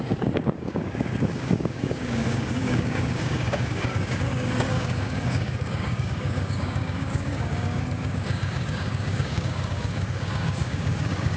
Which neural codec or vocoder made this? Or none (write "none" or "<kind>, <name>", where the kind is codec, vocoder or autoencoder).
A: codec, DAC